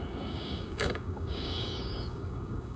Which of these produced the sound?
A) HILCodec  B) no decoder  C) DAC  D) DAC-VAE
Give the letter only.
C